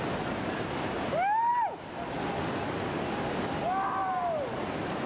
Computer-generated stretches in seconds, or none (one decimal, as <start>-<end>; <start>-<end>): none